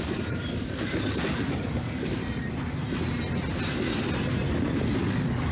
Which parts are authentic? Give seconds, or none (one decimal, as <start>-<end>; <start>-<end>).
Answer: 2.2-5.0